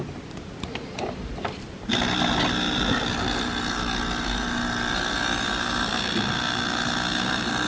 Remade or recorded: recorded